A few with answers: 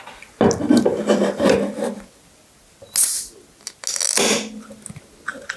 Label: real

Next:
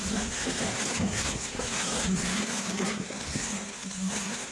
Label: fake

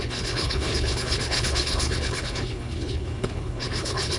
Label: fake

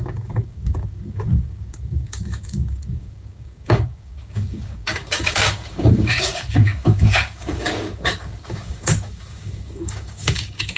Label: fake